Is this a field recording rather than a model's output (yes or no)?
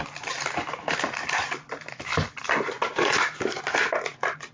yes